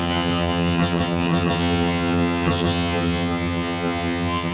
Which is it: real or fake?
fake